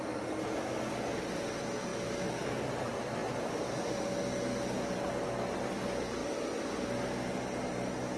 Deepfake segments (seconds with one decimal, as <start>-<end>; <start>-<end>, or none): none